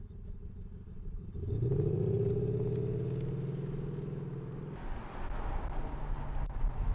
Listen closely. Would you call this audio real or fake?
real